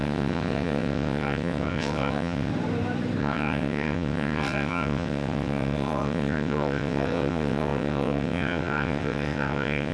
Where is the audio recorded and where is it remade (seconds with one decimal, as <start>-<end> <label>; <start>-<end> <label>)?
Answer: 0.0-2.5 remade; 2.5-3.2 recorded; 3.2-9.9 remade